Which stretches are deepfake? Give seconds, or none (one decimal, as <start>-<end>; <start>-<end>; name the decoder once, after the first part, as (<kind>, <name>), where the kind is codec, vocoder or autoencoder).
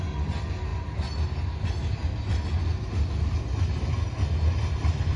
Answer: none